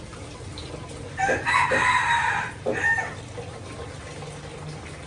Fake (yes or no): no